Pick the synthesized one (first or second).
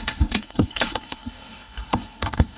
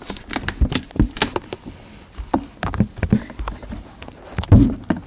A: first